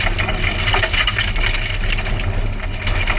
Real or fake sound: real